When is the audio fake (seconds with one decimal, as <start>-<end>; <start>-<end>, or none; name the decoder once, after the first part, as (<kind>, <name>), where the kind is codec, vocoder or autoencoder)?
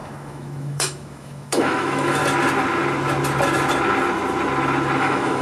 0.0-2.2 (autoencoder, DAC-VAE); 5.0-5.4